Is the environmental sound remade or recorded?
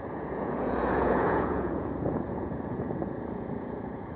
remade